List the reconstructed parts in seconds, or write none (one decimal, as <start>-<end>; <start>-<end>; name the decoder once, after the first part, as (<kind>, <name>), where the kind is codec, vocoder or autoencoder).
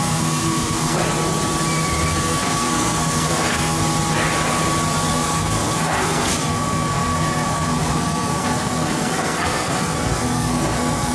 0.0-1.0 (codec, SNAC); 2.1-3.8; 5.1-11.1